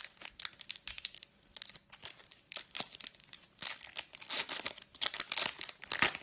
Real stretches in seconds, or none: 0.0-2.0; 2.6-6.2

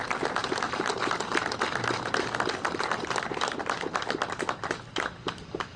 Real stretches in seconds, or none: 0.0-0.4; 0.9-5.8

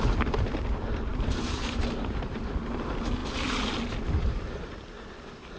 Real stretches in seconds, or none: 0.0-1.1; 2.3-5.6

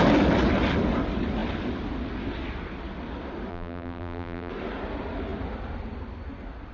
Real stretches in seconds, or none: 0.0-3.5; 4.5-6.7

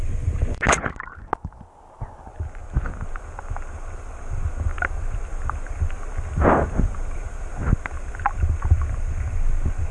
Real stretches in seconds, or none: 0.0-9.9

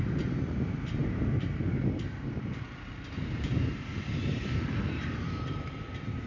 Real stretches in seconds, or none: 3.5-4.1

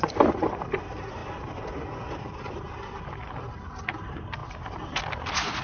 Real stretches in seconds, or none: 1.2-4.0

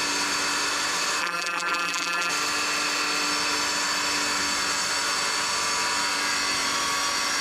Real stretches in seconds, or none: 0.0-1.2; 2.3-7.4